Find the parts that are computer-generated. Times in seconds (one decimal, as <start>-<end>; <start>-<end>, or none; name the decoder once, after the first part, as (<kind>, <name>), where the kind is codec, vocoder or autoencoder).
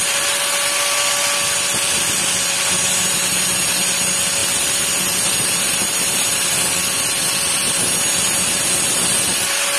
none